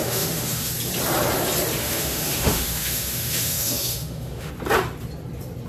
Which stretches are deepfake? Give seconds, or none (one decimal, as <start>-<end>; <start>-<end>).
0.0-0.7; 1.8-4.5